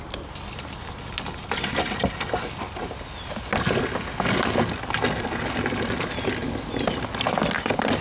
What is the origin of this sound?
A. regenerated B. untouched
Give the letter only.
B